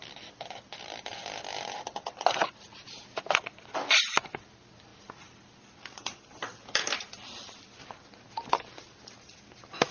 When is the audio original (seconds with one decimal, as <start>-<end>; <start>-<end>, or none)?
0.0-1.1; 4.3-4.9; 5.8-6.4; 8.0-9.9